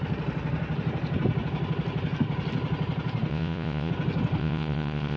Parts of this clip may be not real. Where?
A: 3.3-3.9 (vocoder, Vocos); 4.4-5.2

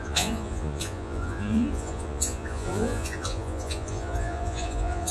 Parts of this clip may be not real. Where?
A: 0.0-5.1 (vocoder, Vocos)

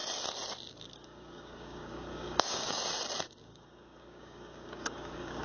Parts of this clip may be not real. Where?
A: 0.7-2.8 (codec, DAC); 3.4-5.4

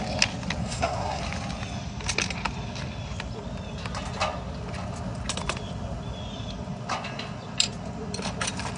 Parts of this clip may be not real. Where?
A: 0.6-1.2 (codec, SNAC)

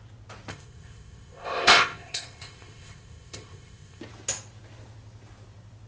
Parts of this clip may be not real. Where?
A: 0.5-4.0 (codec, ZipCodec)

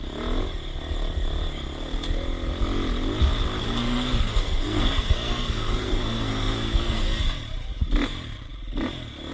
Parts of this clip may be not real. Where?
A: 3.6-7.0 (codec, SNAC)

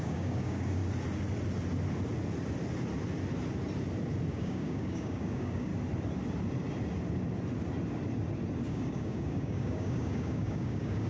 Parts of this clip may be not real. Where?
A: 0.0-0.8 (codec, DAC); 4.3-5.7; 8.7-11.1